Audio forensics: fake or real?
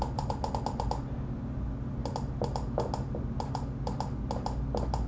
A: real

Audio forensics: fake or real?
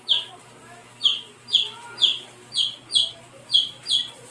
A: real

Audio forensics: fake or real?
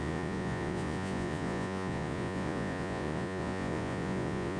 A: fake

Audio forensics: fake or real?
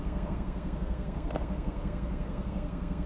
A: fake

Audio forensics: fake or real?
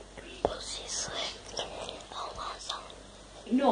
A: real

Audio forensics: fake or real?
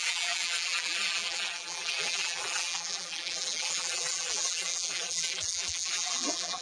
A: fake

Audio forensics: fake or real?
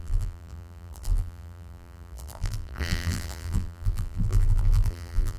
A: fake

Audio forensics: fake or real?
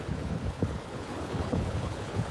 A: fake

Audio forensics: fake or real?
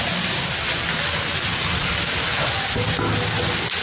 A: real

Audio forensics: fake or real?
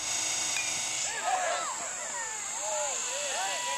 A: real